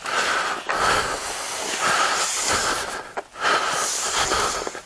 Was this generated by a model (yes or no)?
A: no